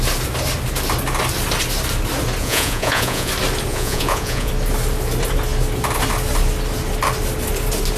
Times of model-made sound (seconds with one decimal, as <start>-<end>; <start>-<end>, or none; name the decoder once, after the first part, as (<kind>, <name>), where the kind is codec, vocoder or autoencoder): 2.4-3.3 (vocoder, Vocos); 3.7-4.5